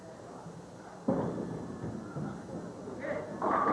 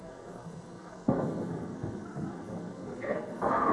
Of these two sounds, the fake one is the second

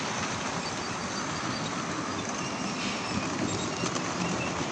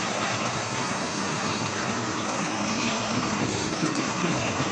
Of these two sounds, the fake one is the second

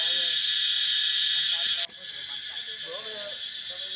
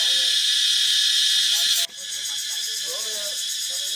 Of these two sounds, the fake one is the second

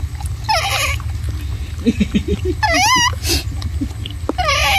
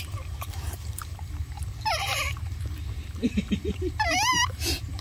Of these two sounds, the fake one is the second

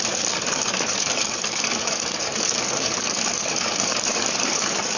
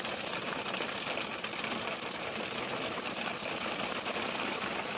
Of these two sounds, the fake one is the first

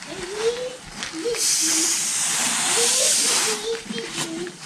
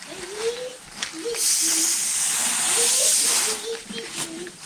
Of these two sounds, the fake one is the first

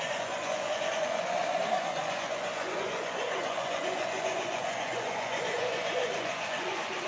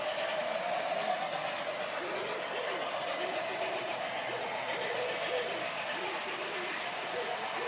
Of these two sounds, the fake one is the first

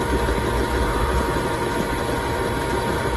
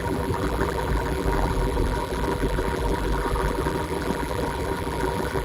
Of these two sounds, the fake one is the second